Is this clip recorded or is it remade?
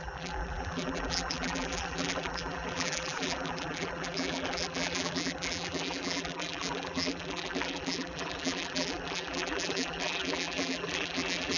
remade